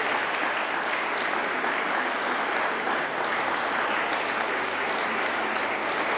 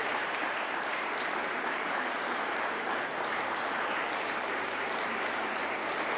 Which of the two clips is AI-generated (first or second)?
second